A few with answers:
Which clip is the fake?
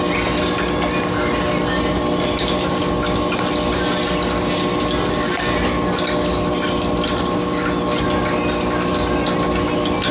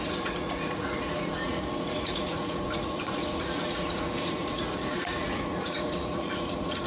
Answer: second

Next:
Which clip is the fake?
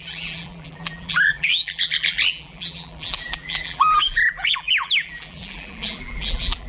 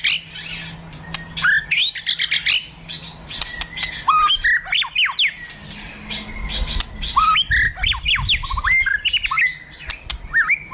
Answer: first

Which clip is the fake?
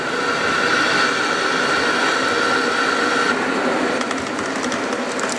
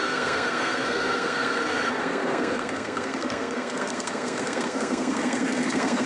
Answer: second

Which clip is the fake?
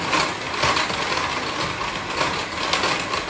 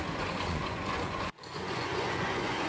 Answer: second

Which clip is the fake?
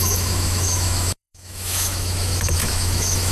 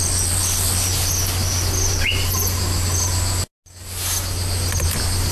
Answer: first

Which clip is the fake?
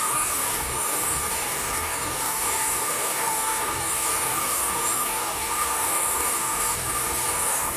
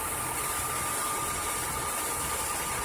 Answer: first